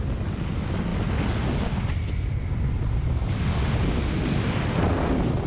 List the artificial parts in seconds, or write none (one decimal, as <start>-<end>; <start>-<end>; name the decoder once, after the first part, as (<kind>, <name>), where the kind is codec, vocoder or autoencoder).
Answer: none